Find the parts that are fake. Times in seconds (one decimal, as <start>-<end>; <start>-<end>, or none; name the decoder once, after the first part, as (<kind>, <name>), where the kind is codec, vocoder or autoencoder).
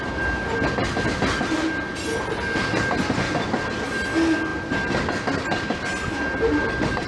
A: none